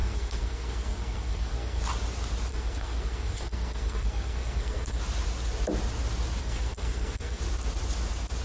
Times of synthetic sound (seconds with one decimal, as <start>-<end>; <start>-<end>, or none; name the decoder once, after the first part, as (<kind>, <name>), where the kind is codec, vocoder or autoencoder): 0.0-1.8 (codec, SNAC); 2.5-5.0; 6.4-7.4